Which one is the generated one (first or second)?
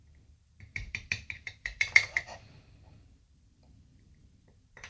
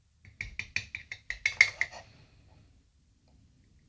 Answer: first